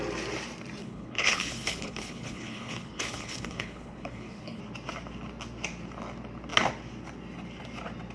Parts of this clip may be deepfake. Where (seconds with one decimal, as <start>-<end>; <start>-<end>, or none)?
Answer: 0.8-4.6